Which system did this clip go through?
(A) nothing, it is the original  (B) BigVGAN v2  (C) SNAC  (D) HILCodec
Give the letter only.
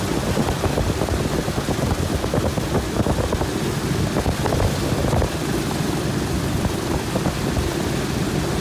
A